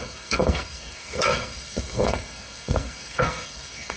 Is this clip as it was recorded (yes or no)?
no